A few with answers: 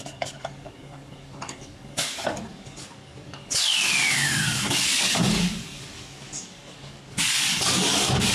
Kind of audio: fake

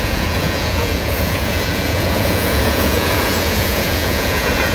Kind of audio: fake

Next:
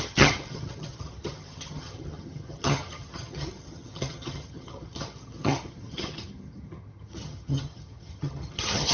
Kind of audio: fake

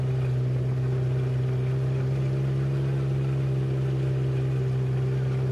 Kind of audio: real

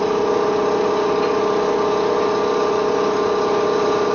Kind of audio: real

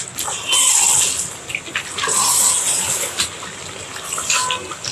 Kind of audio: real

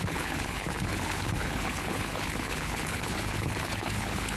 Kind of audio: fake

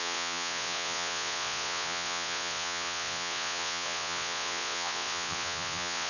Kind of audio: fake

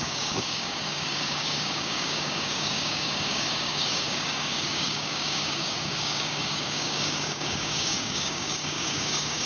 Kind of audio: fake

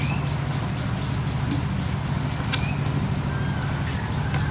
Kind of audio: real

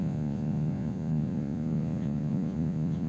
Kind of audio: fake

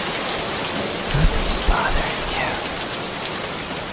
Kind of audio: real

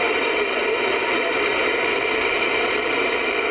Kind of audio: real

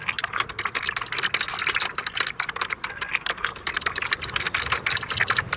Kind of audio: real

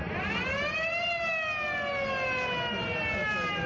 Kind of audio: real